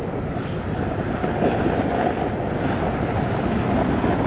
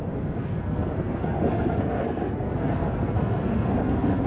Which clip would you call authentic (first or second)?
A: first